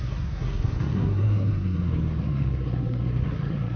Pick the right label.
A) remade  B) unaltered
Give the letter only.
A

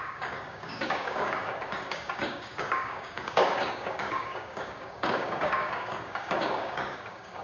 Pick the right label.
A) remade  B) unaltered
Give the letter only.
A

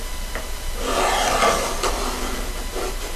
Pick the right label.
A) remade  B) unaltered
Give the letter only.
A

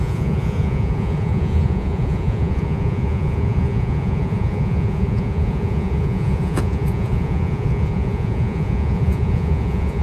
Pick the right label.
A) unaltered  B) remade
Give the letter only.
B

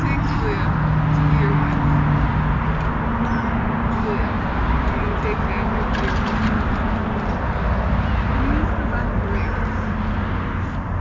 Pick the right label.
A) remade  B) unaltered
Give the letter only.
B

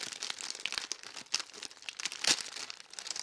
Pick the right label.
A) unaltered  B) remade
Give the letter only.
A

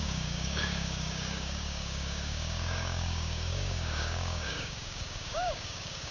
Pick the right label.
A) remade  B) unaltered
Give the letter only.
A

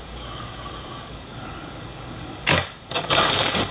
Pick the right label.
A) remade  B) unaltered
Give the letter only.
A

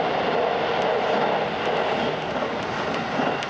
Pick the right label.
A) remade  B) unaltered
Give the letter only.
B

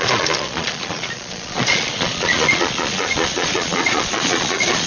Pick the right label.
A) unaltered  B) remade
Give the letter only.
B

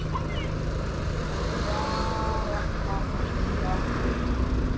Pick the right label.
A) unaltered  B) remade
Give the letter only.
A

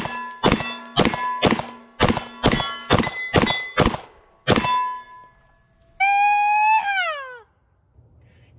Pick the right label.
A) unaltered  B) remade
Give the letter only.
A